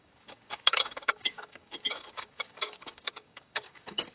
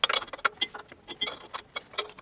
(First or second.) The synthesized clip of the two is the first